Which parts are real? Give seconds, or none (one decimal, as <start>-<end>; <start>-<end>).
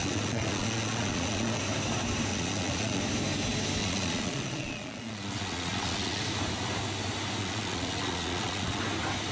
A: 1.6-2.3; 3.0-3.8; 6.2-7.4; 8.8-9.3